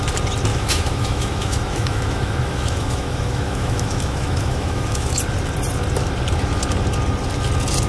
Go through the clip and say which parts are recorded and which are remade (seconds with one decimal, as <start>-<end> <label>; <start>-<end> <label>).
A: 0.0-0.5 recorded; 0.5-5.2 remade; 5.2-7.9 recorded